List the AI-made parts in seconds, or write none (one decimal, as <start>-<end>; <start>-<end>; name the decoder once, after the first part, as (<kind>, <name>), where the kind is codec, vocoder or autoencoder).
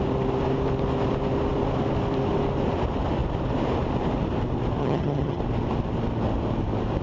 4.8-5.4 (vocoder, HiFi-GAN)